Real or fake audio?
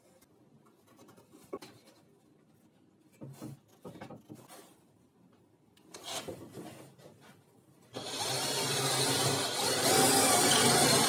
real